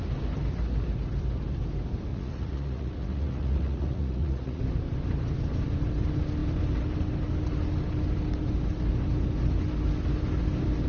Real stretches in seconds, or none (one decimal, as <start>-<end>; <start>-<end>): 0.0-2.1; 4.6-10.9